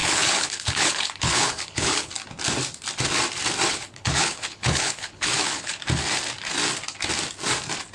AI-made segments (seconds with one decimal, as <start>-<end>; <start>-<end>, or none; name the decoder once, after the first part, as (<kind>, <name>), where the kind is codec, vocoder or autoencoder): 0.0-2.1 (codec, HILCodec); 3.7-5.8